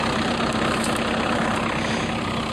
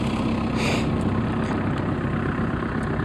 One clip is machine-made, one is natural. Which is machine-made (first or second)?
first